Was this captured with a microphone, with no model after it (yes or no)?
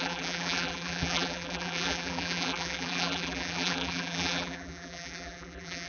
no